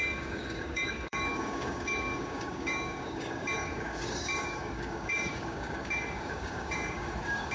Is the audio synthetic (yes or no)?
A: yes